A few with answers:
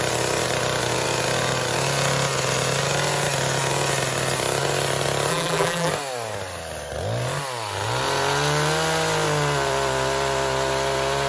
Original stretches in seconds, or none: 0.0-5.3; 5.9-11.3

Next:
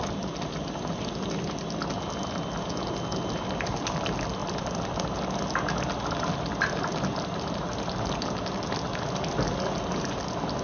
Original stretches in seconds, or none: 0.0-10.6

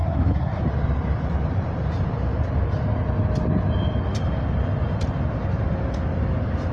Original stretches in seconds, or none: 0.6-6.7

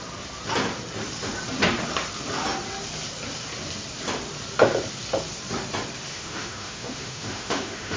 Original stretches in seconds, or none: 0.0-6.1

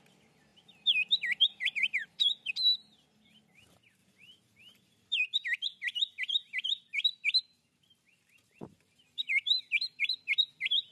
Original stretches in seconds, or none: 0.0-0.5; 2.5-4.0; 5.2-8.4